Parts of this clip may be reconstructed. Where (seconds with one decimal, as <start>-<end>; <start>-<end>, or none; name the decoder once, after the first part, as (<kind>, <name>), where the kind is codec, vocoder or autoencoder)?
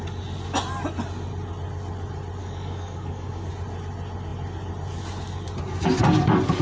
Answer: 2.4-3.5 (codec, DAC)